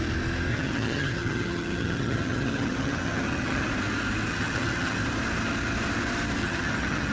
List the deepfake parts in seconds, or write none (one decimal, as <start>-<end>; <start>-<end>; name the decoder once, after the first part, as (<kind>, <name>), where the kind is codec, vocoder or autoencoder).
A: 0.5-3.7 (vocoder, HiFi-GAN); 4.3-5.0; 6.4-7.1